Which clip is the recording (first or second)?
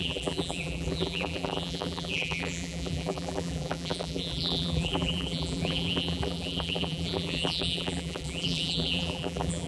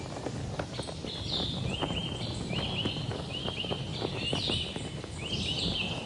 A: second